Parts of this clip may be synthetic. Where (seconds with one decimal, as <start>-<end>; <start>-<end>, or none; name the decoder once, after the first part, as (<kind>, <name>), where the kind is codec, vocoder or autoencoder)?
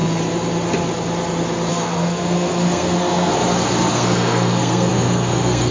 1.7-3.3 (codec, SNAC); 3.9-5.7